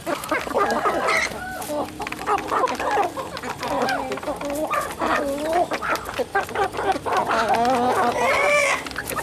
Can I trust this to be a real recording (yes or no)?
yes